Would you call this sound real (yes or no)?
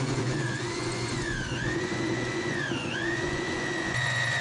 no